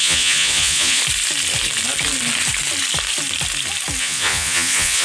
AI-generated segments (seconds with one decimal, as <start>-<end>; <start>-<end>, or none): 0.0-1.0; 4.0-5.0